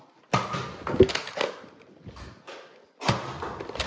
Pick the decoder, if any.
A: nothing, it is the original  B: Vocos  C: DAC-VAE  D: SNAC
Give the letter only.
A